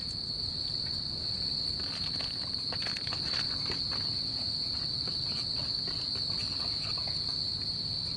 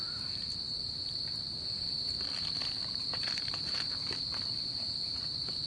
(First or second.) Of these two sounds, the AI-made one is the second